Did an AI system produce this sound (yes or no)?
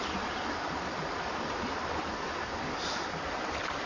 no